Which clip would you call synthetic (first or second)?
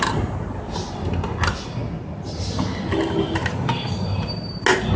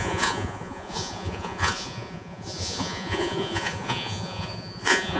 second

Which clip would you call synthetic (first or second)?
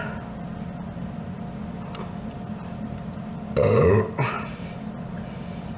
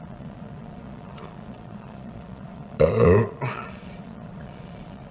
second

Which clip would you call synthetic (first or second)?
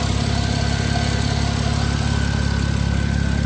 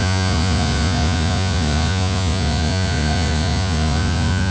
second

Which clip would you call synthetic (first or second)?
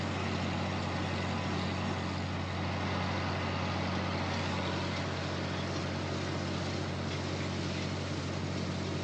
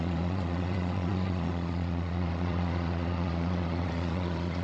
second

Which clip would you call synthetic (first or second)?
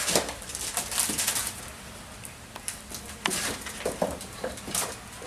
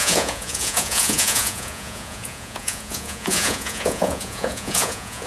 second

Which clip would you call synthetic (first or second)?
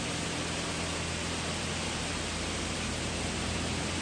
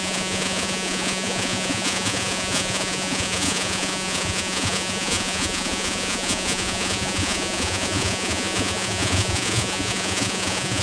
second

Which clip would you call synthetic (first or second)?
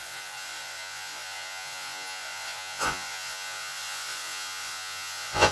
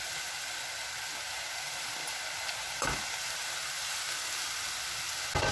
first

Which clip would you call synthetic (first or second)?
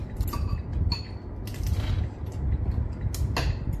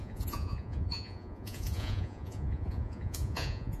second